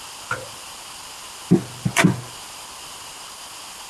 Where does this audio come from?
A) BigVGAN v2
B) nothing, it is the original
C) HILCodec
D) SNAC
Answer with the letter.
B